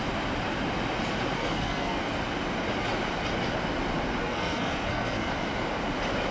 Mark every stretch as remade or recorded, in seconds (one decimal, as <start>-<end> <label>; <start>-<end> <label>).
0.0-1.4 recorded; 1.4-2.0 remade; 2.0-4.2 recorded; 4.2-5.3 remade; 5.3-6.3 recorded